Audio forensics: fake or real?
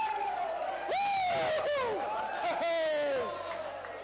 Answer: real